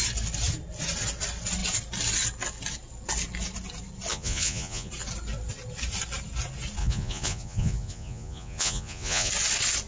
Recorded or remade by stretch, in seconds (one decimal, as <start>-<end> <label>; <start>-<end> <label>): 0.0-4.1 recorded; 4.1-4.9 remade; 4.9-6.8 recorded; 6.8-9.3 remade; 9.3-9.9 recorded